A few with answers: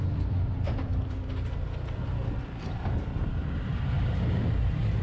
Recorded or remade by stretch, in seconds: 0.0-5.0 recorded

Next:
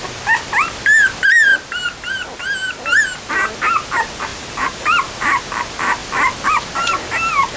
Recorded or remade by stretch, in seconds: 0.0-4.3 recorded; 4.3-5.4 remade; 5.4-7.6 recorded

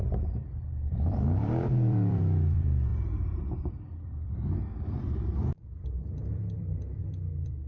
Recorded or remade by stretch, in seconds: 0.0-7.7 remade

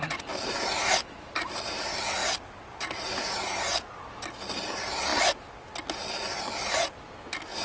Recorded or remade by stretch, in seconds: 0.0-7.6 recorded

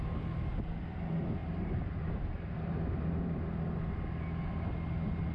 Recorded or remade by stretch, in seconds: 0.0-1.4 recorded; 1.4-3.4 remade; 3.4-5.3 recorded